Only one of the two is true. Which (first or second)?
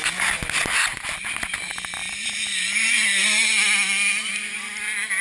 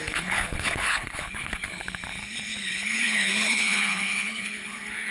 first